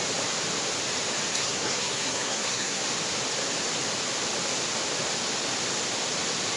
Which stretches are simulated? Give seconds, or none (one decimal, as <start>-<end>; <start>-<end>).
1.3-2.8